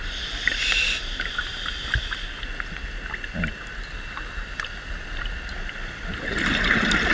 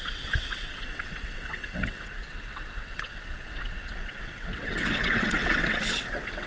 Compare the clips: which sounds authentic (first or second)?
first